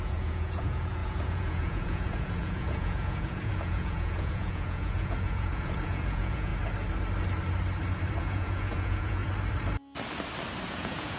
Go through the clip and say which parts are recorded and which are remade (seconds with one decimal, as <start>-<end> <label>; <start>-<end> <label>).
0.0-6.5 remade; 6.5-8.2 recorded; 8.2-9.2 remade; 9.2-10.7 recorded; 10.7-11.2 remade